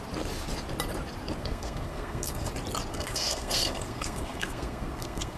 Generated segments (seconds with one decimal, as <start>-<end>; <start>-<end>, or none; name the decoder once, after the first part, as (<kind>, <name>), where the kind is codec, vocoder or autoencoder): 1.4-2.5 (codec, SNAC); 2.9-5.4

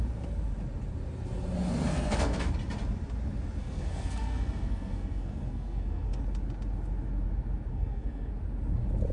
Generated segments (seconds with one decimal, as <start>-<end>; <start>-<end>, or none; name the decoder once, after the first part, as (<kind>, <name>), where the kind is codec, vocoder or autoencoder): 1.9-2.4 (codec, SNAC); 3.6-6.2; 7.7-8.3

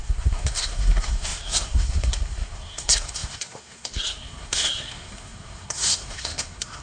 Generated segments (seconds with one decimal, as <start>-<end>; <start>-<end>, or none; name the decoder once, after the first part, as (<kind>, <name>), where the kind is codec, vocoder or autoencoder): 0.0-6.8 (codec, SNAC)

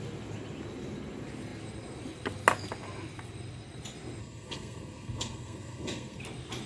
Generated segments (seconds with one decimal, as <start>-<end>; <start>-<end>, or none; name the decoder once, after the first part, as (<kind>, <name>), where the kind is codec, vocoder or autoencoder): 4.2-6.2 (codec, SNAC)

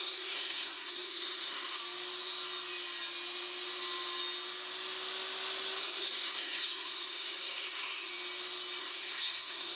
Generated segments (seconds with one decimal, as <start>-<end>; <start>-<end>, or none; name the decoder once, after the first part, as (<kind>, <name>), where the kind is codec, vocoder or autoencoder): 0.0-1.8 (codec, SNAC); 5.8-8.1; 8.8-9.8

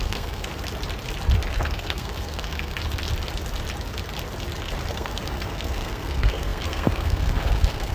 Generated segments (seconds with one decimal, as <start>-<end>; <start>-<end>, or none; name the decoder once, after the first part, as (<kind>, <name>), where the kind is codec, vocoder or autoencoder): 0.0-0.5 (codec, SNAC); 1.5-2.7; 4.9-7.9

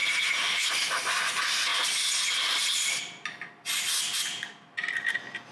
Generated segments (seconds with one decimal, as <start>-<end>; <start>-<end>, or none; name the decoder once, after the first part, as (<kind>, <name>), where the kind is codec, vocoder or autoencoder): none

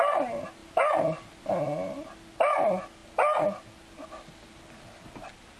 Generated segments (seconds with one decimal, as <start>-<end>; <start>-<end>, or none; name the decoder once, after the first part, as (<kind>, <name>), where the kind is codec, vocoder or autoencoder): none